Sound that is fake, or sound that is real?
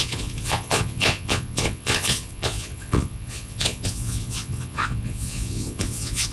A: fake